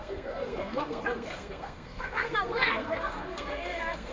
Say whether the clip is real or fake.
fake